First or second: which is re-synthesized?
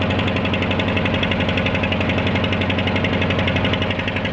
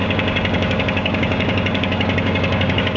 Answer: second